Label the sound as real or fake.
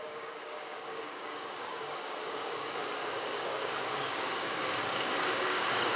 fake